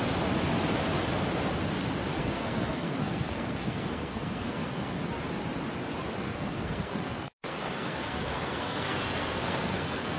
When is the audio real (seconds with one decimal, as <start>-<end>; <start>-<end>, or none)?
0.0-2.1; 5.0-6.2